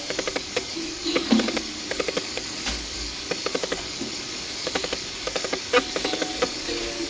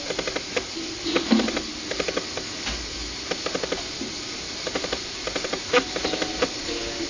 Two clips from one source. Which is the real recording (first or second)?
second